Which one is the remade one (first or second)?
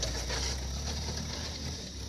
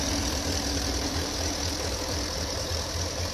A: second